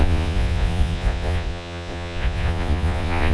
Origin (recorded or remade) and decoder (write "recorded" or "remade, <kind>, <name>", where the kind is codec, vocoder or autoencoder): remade, vocoder, Vocos